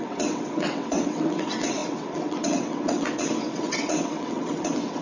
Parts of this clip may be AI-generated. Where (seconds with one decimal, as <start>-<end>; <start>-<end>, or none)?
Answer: 0.0-5.0